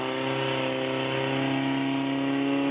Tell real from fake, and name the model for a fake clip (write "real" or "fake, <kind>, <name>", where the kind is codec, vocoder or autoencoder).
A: real